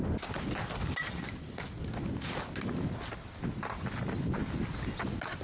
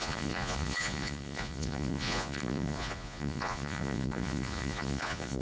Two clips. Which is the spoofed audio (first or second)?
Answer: second